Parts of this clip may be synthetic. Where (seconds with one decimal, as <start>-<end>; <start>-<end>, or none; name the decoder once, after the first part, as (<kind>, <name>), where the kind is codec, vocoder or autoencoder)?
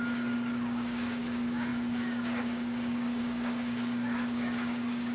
0.0-5.1 (codec, DAC)